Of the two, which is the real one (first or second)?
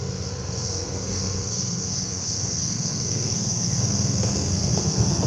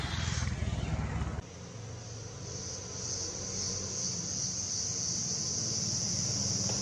second